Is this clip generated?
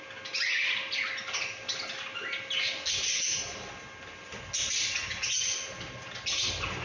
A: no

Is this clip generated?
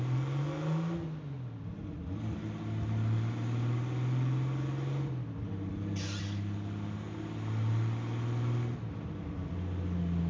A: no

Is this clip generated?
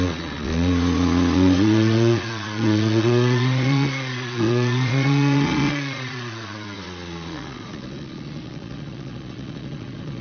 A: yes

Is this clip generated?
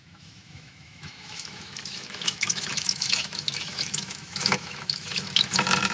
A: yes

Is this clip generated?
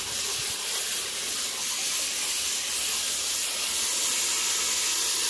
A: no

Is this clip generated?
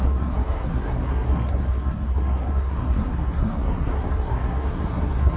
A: yes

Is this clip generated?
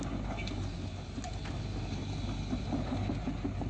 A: no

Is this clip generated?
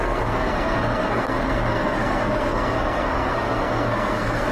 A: yes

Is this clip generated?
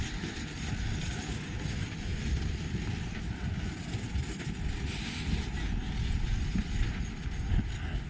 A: no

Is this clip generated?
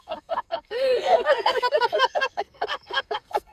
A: yes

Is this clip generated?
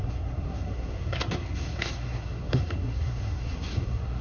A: yes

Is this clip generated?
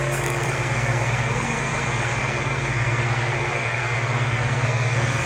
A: yes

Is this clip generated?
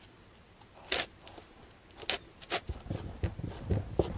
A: no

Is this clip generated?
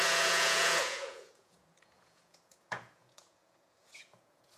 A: yes